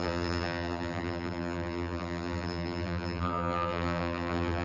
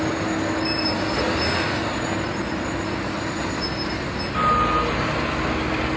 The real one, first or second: second